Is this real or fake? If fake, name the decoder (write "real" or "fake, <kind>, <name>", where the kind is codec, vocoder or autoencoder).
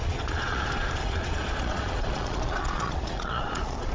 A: fake, vocoder, Vocos